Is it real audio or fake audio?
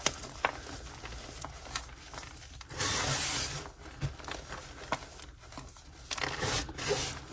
real